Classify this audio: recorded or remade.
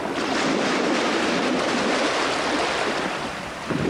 recorded